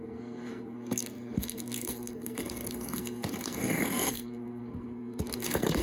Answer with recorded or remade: remade